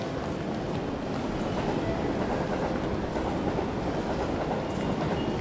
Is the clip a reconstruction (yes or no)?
no